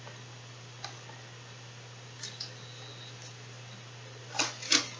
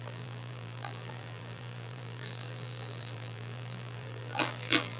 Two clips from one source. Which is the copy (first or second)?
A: second